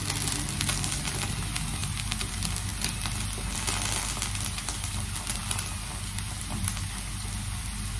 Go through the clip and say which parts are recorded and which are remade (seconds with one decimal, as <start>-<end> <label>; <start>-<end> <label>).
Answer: 0.0-8.0 recorded